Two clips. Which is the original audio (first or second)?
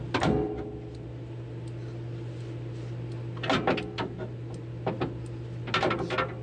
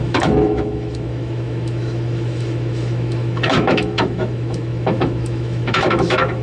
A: first